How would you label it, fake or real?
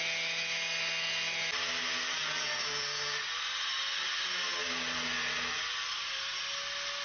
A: real